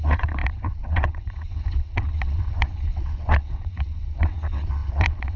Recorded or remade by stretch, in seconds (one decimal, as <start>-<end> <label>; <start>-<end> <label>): 0.0-5.4 remade

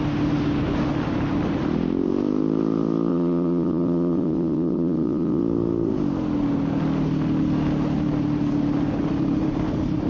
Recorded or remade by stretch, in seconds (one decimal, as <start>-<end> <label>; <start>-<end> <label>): 0.0-3.1 recorded; 3.1-5.4 remade; 5.4-10.1 recorded

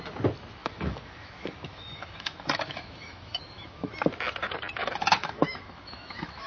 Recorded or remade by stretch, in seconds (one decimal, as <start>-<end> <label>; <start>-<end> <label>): 0.0-0.6 recorded; 0.6-3.9 remade; 3.9-4.8 recorded; 4.8-6.5 remade

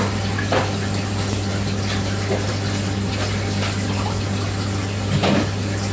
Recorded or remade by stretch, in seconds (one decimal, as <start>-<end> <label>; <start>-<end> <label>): 0.0-5.9 recorded

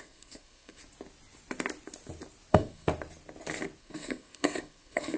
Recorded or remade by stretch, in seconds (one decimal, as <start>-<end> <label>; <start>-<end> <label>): 0.0-0.8 remade; 0.8-2.5 recorded; 2.5-2.9 remade; 2.9-3.8 recorded; 3.8-5.2 remade